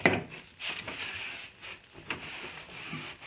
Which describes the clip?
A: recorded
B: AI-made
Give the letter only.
A